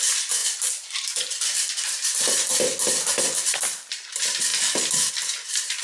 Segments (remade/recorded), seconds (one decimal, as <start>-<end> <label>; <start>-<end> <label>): 0.0-0.4 remade; 0.4-3.9 recorded; 3.9-4.5 remade; 4.5-5.1 recorded; 5.1-5.8 remade

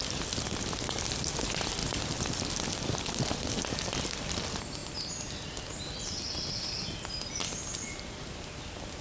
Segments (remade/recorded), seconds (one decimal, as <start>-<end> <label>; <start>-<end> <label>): 0.0-1.8 recorded; 1.8-4.1 remade; 4.1-9.0 recorded

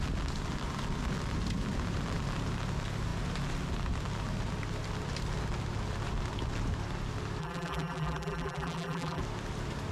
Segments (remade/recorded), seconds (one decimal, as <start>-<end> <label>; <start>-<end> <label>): 0.0-7.4 recorded; 7.4-9.2 remade; 9.2-9.9 recorded

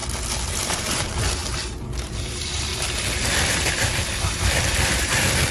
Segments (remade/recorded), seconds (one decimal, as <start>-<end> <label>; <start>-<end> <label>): 0.0-0.5 recorded; 0.5-2.7 remade; 2.7-3.7 recorded; 3.7-5.5 remade

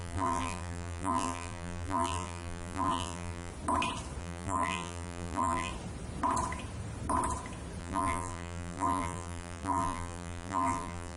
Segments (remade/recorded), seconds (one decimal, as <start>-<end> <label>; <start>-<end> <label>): 0.0-3.5 remade; 3.5-4.2 recorded; 4.2-5.7 remade; 5.7-7.8 recorded; 7.8-11.2 remade

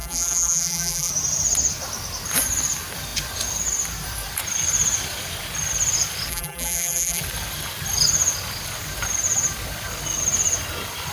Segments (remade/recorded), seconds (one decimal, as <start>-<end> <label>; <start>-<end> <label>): 0.0-1.1 remade; 1.1-6.3 recorded; 6.3-7.2 remade; 7.2-11.1 recorded

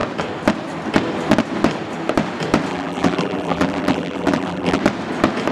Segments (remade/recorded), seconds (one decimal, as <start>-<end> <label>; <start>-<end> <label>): 0.0-2.7 recorded; 2.7-4.8 remade; 4.8-5.5 recorded